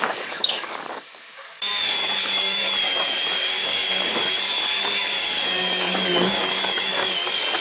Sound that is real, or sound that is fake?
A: fake